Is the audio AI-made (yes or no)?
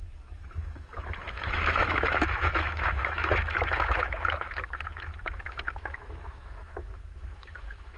yes